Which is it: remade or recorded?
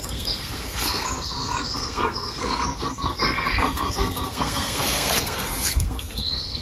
remade